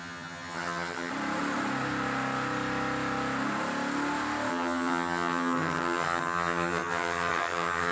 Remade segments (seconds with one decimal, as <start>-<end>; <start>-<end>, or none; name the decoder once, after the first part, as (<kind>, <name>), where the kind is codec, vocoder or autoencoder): 0.0-1.1 (vocoder, HiFi-GAN); 4.5-7.9